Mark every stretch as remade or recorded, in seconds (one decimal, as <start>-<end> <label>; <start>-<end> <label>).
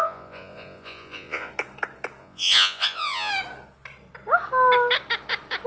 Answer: 0.0-1.5 remade; 1.5-2.2 recorded; 2.2-3.3 remade; 3.3-5.7 recorded